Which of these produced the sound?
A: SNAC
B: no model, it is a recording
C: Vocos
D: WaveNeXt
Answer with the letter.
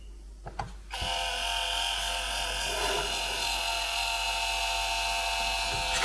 B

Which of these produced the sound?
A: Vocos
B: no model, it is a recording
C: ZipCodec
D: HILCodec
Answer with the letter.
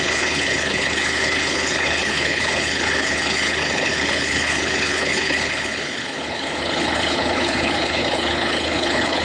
D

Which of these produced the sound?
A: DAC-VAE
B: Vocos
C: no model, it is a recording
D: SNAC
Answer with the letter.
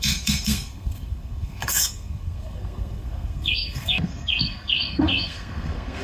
D